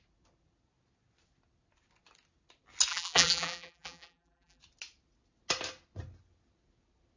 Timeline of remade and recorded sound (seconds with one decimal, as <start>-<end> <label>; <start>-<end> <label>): 0.0-2.9 recorded; 2.9-4.6 remade; 4.6-7.2 recorded